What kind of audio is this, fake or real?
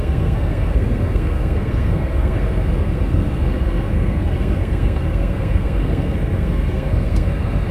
fake